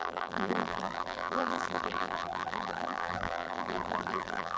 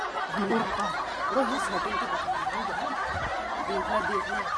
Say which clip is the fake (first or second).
first